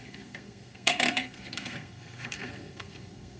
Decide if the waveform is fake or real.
fake